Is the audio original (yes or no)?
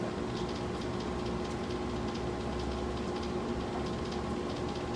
yes